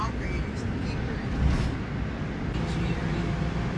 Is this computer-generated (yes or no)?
no